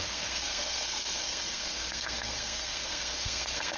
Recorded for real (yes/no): no